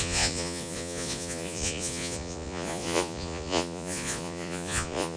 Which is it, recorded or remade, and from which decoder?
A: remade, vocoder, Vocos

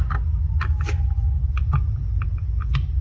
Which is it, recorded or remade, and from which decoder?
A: recorded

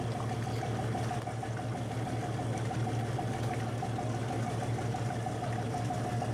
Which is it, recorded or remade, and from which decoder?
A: recorded